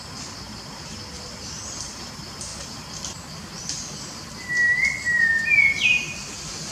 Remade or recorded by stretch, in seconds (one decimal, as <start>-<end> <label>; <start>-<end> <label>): 0.0-6.7 recorded